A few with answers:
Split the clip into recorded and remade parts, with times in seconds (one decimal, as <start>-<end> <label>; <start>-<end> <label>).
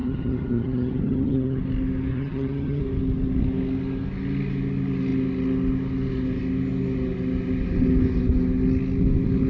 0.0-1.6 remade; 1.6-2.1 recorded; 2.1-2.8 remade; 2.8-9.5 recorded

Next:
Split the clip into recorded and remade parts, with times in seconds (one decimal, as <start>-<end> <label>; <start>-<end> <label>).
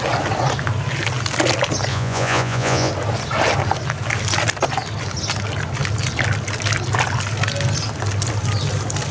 0.0-1.9 recorded; 1.9-2.9 remade; 2.9-9.1 recorded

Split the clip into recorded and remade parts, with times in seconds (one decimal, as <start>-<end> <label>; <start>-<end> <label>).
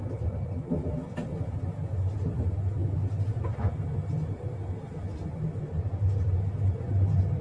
0.0-2.8 remade; 2.8-3.5 recorded; 3.5-7.4 remade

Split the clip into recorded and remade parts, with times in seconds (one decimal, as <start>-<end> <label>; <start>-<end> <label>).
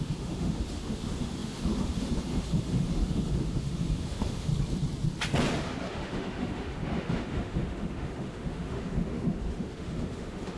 0.0-4.5 remade; 4.5-5.9 recorded; 5.9-10.6 remade